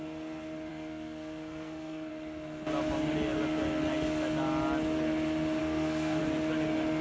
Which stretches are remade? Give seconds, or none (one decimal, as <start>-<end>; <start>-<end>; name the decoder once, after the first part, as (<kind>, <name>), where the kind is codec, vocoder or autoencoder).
0.7-2.1 (codec, SNAC); 5.6-6.2